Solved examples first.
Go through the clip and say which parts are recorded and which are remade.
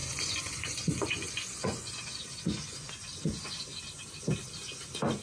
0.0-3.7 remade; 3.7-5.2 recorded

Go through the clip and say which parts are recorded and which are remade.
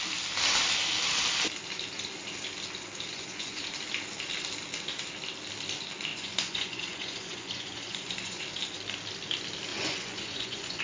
0.0-3.1 recorded; 3.1-3.6 remade; 3.6-6.1 recorded; 6.1-8.4 remade; 8.4-9.7 recorded; 9.7-10.8 remade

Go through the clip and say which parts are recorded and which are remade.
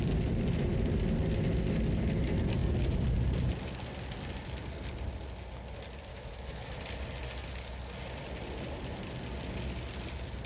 0.0-6.1 recorded; 6.1-6.8 remade; 6.8-10.5 recorded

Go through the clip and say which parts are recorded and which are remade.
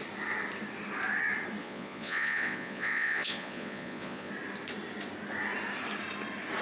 0.0-1.6 recorded; 1.6-4.3 remade; 4.3-6.6 recorded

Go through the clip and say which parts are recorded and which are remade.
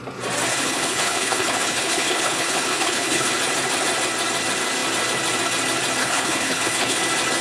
0.0-0.5 recorded; 0.5-3.3 remade; 3.3-6.0 recorded; 6.0-7.0 remade; 7.0-7.4 recorded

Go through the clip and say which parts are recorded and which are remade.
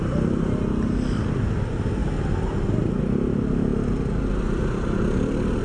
0.0-5.6 recorded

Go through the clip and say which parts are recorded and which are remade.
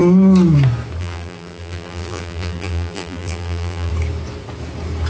0.0-1.0 recorded; 1.0-3.9 remade; 3.9-5.1 recorded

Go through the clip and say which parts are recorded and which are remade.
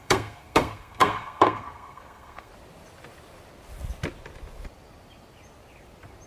0.0-2.5 remade; 2.5-6.3 recorded